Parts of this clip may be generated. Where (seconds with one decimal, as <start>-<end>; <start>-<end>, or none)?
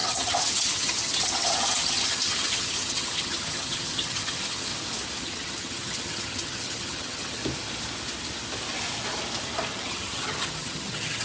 0.0-4.7; 5.2-7.4; 9.7-11.2